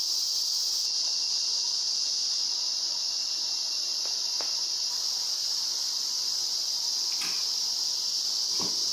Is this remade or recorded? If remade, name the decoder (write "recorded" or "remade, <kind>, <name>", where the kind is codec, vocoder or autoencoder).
recorded